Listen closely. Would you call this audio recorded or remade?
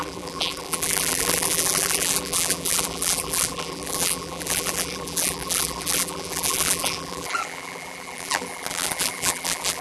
remade